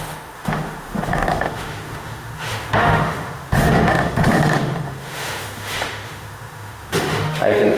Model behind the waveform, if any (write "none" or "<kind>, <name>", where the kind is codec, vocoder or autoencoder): autoencoder, DAC-VAE